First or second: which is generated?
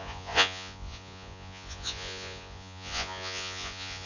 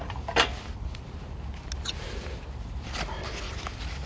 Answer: first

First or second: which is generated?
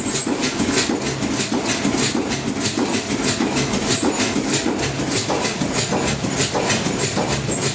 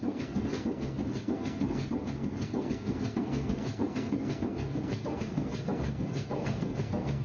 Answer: second